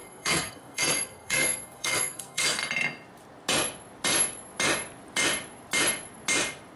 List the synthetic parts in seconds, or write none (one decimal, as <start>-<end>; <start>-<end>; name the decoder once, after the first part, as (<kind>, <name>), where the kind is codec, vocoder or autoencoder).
0.0-2.6 (codec, SNAC)